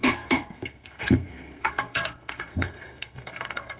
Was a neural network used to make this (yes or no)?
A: yes